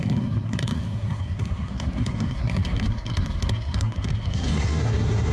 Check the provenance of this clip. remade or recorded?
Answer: remade